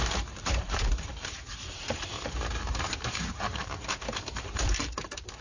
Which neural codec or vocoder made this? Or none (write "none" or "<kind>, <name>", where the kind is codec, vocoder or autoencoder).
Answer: vocoder, BigVGAN v2